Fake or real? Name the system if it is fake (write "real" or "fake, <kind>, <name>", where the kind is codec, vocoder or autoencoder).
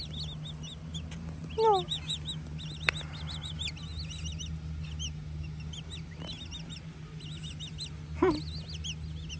real